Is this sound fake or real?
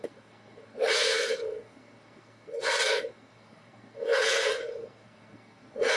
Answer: fake